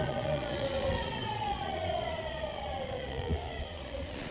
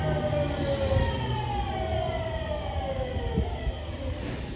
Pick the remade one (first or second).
first